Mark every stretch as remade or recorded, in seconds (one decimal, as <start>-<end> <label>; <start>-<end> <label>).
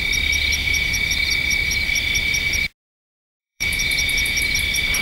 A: 0.0-0.6 recorded; 0.6-1.1 remade; 1.1-3.4 recorded; 3.4-4.4 remade; 4.4-5.0 recorded